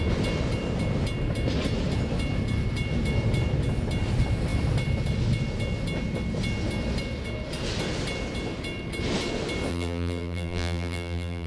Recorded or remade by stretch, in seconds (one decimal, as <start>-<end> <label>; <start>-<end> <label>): 0.0-9.7 recorded; 9.7-11.5 remade